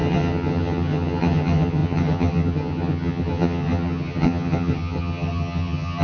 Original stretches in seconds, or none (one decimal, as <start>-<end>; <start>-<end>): none